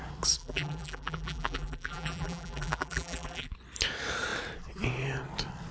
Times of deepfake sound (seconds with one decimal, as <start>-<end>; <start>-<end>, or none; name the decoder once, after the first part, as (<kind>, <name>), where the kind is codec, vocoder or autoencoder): 0.4-3.5 (vocoder, BigVGAN v2)